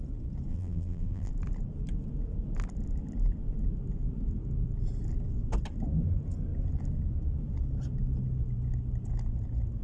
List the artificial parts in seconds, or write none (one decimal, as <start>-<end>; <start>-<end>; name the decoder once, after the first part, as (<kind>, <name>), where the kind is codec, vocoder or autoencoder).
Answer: 0.5-1.3 (vocoder, BigVGAN v2)